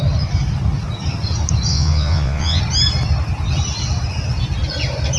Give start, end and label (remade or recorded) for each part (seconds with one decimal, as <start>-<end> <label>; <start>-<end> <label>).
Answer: 0.0-1.7 recorded; 1.7-2.6 remade; 2.6-5.2 recorded